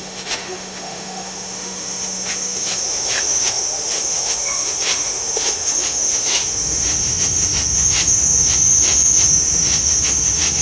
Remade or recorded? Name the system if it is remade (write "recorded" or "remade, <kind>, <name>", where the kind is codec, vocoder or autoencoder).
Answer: remade, autoencoder, DAC-VAE